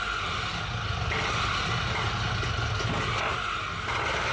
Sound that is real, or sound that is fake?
real